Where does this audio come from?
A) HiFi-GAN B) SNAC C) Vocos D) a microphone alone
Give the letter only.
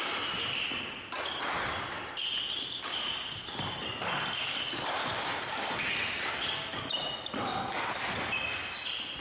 D